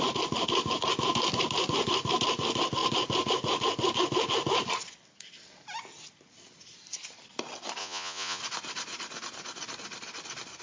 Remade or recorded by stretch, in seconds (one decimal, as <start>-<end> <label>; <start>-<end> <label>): 0.0-7.8 recorded; 7.8-8.4 remade; 8.4-10.6 recorded